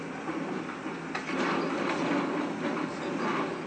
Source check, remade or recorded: recorded